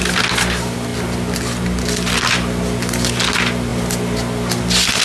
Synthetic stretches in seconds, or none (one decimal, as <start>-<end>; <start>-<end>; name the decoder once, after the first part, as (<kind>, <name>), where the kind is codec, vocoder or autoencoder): none